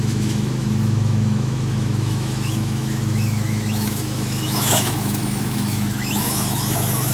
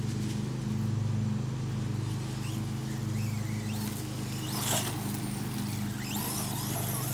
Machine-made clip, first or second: first